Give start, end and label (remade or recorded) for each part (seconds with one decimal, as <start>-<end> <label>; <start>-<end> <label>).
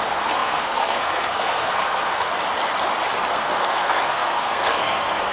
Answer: 0.0-2.3 remade; 2.3-3.2 recorded; 3.2-5.3 remade